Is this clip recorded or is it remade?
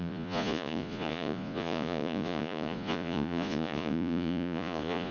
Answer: remade